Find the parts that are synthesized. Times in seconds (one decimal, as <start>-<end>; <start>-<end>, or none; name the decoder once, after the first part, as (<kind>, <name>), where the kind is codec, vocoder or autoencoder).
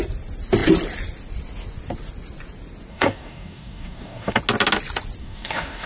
2.9-4.4 (codec, DAC); 5.2-5.9